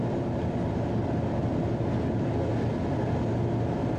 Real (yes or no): yes